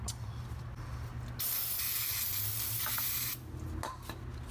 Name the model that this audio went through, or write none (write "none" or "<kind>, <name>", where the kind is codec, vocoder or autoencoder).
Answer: none